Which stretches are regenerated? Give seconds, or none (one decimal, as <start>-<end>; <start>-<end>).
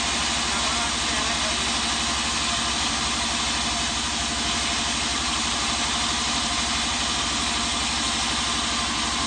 5.1-7.2